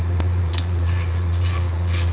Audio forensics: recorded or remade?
remade